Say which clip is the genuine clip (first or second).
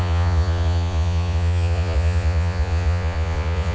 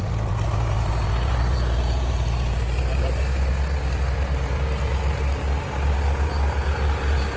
second